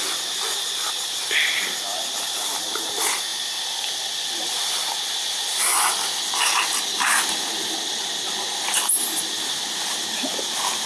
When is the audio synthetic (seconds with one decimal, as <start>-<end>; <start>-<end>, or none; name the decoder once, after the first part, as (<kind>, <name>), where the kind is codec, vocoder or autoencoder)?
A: none